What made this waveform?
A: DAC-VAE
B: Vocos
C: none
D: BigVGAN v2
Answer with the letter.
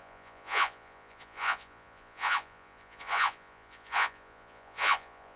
B